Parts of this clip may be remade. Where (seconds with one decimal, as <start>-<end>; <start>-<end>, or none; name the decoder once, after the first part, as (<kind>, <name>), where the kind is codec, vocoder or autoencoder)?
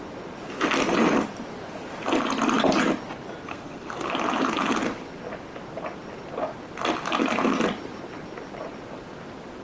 3.5-4.1 (codec, SNAC)